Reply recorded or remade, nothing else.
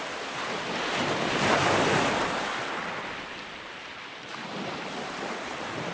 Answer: recorded